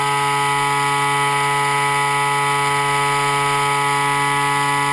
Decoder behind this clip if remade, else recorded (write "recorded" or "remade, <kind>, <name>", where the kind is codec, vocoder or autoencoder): recorded